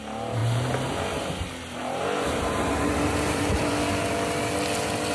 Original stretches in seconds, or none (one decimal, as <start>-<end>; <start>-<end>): 0.0-1.8; 3.6-5.1